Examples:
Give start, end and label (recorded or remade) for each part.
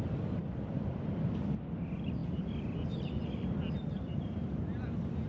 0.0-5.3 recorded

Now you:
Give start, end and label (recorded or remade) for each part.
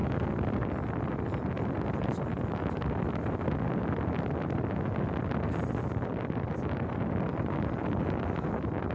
0.0-8.9 recorded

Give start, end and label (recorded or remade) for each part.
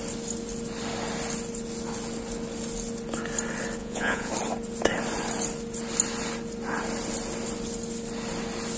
0.0-3.8 recorded; 3.8-4.3 remade; 4.3-8.8 recorded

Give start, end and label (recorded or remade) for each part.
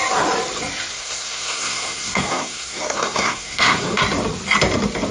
0.0-0.9 recorded; 0.9-4.0 remade; 4.0-5.1 recorded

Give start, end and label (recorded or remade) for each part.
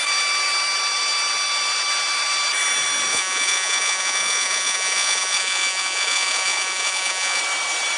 0.0-3.1 recorded; 3.1-7.4 remade; 7.4-8.0 recorded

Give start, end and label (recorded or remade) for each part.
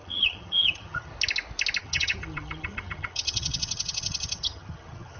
0.0-1.1 remade; 1.1-1.8 recorded; 1.8-5.2 remade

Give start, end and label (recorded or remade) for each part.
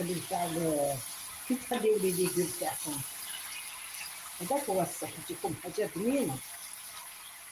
0.0-7.5 recorded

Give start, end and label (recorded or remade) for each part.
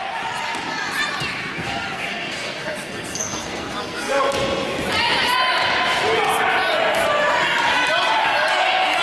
0.0-1.4 recorded; 1.4-4.3 remade; 4.3-9.0 recorded